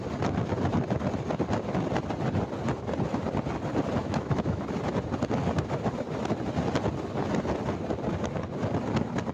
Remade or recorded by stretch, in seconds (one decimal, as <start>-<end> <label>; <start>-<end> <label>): 0.0-4.0 recorded; 4.0-4.6 remade; 4.6-9.3 recorded